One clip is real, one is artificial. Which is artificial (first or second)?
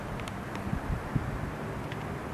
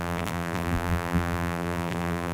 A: second